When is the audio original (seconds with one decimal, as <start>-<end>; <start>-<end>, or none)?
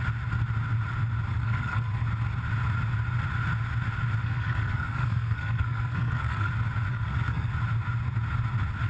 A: 0.0-1.3; 1.9-4.2; 6.5-6.9; 7.5-8.9